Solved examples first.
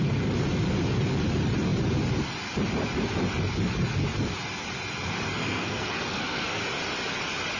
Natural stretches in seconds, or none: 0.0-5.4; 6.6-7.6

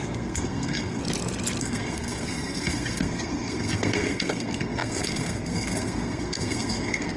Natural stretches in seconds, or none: 1.0-1.6

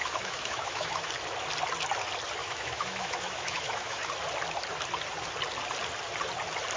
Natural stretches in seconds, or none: 1.1-2.4; 4.0-6.8